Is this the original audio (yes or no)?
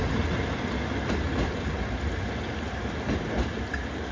yes